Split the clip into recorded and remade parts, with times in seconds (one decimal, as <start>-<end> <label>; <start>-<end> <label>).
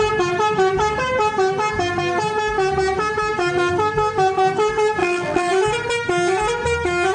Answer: 0.0-5.0 recorded; 5.0-5.5 remade; 5.5-7.1 recorded